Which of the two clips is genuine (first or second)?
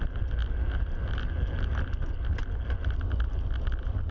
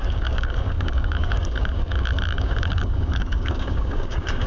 first